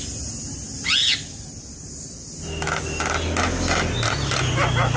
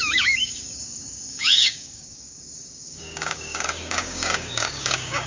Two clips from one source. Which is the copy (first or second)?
second